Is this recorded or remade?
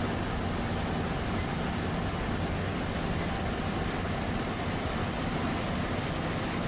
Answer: recorded